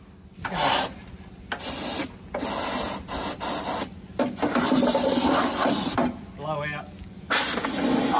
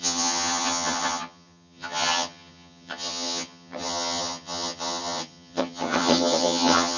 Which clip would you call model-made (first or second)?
second